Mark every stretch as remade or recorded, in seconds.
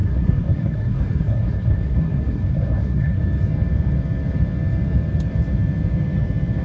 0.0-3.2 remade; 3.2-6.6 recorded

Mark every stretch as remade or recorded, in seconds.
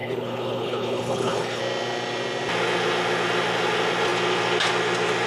0.0-1.6 remade; 1.6-5.3 recorded